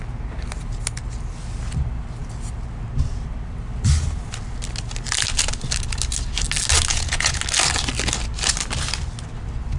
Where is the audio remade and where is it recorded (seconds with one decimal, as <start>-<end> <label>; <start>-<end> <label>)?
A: 0.0-6.9 recorded; 6.9-7.4 remade; 7.4-9.8 recorded